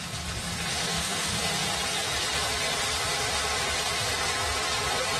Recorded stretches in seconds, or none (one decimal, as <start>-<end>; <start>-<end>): 0.0-0.7; 1.4-5.2